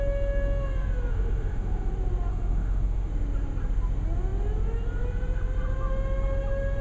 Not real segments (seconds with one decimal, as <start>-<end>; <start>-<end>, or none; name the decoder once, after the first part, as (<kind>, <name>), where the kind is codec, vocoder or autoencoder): 1.1-1.9 (autoencoder, DAC-VAE); 2.3-3.1